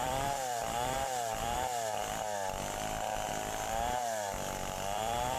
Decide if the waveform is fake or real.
fake